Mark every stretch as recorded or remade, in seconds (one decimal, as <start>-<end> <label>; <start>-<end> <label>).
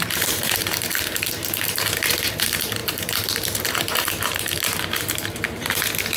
0.0-6.2 remade